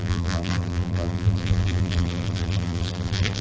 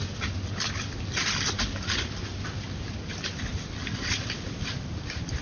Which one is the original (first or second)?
second